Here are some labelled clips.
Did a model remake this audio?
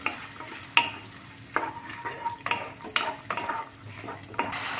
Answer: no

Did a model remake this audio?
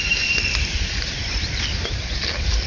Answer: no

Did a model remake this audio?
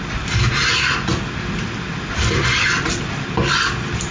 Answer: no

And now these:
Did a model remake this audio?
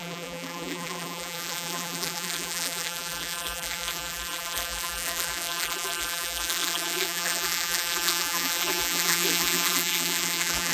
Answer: yes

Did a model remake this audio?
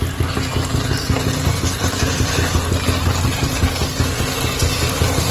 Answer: no